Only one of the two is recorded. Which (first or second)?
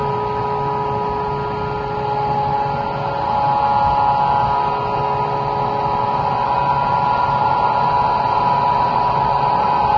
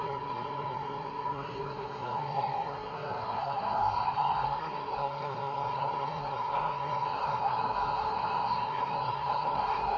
first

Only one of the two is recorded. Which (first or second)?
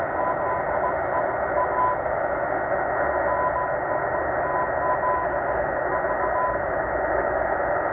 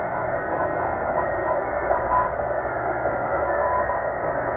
first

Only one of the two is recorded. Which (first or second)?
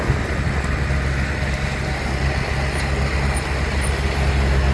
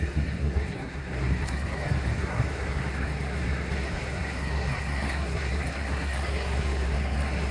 first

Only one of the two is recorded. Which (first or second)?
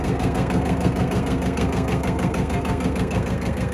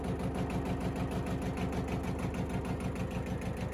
second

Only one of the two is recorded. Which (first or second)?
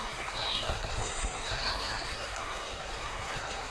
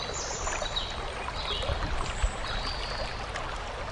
second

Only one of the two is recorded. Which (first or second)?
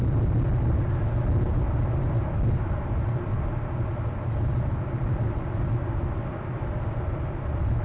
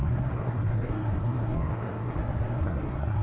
first